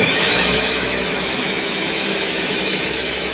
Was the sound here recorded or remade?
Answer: remade